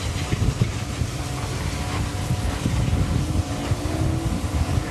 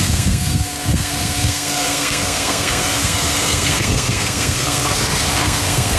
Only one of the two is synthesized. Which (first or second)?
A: second